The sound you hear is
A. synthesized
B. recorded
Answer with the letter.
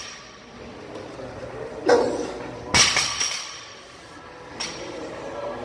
B